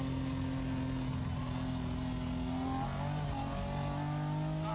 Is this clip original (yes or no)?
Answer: yes